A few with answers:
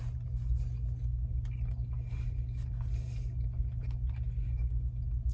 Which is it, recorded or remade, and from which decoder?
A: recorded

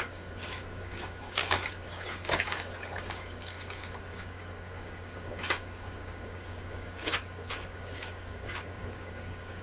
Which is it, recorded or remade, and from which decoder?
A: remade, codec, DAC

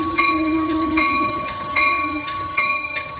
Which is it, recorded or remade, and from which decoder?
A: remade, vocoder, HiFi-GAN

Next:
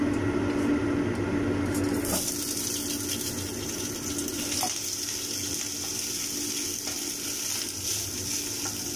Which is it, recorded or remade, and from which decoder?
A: recorded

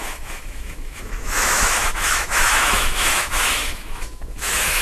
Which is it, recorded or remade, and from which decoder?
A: remade, autoencoder, DAC-VAE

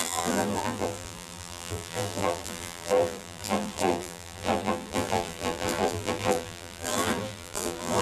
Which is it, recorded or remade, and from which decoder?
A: remade, vocoder, BigVGAN v2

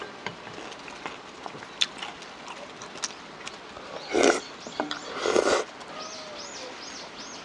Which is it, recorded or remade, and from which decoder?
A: recorded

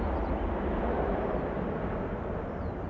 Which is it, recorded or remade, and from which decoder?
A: recorded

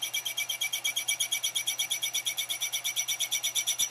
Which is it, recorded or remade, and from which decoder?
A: recorded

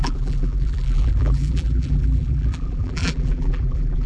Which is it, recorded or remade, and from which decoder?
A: remade, vocoder, BigVGAN v2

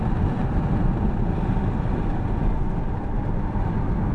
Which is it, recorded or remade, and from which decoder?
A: recorded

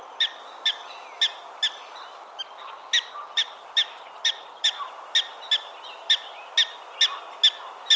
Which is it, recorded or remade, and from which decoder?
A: recorded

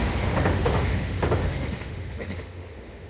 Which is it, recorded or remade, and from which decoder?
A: remade, autoencoder, DAC-VAE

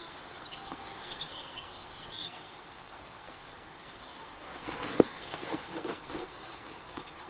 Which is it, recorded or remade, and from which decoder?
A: remade, codec, SNAC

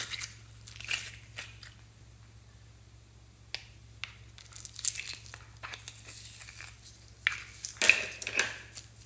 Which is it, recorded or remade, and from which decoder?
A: recorded